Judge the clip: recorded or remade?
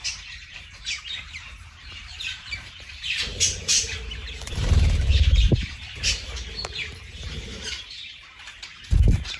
remade